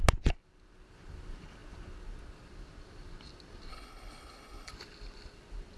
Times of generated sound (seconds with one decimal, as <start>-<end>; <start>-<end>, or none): 3.7-4.7